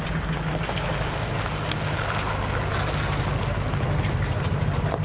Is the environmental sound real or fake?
real